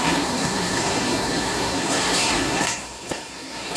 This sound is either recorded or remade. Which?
remade